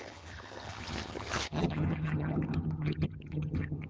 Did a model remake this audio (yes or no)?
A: yes